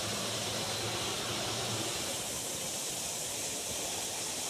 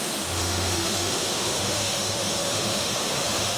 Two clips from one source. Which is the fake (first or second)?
second